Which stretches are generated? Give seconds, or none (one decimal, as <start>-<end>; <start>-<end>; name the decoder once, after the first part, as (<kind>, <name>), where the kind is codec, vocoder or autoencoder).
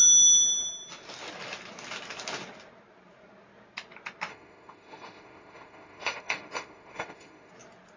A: 4.3-7.5 (autoencoder, DAC-VAE)